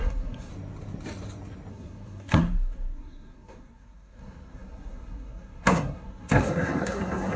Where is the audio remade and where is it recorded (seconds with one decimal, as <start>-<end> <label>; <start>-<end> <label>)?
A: 0.0-0.5 remade; 0.5-1.7 recorded; 1.7-7.4 remade